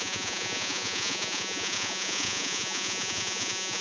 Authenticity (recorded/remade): remade